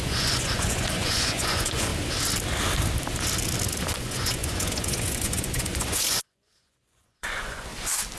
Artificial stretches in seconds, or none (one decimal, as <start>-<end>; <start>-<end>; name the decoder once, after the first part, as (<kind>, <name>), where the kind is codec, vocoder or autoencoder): 0.0-1.9 (vocoder, Vocos); 4.0-7.7